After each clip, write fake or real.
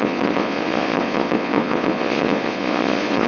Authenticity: fake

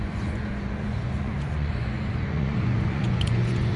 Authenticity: fake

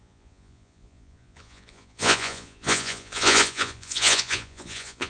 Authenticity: fake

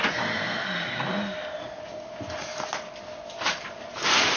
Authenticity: real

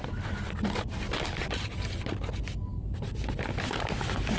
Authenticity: real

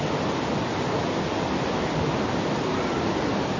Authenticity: real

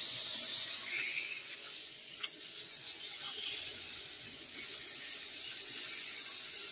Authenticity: fake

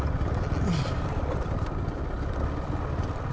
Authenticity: real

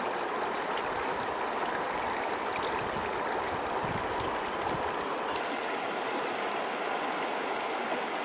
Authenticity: real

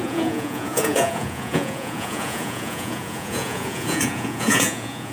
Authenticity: fake